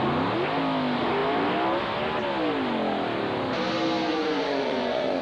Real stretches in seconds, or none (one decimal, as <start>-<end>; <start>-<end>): 0.0-4.1